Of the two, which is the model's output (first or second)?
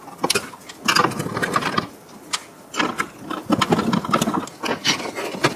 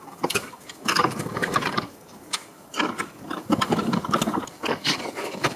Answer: second